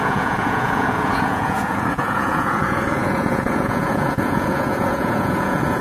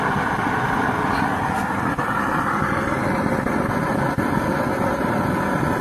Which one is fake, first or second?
first